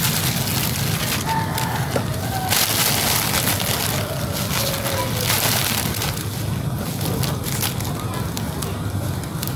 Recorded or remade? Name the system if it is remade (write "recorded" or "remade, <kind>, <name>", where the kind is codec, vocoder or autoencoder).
recorded